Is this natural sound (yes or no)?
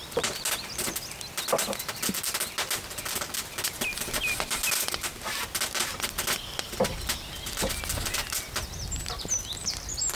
yes